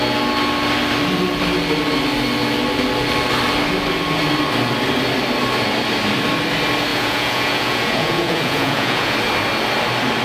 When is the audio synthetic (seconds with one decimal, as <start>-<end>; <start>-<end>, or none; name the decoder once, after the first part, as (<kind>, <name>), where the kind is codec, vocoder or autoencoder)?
6.9-9.1 (vocoder, Vocos)